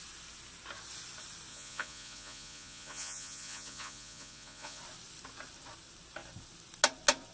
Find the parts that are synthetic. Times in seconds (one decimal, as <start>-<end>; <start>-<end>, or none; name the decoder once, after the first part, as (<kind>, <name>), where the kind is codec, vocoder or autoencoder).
1.5-4.8 (vocoder, Vocos)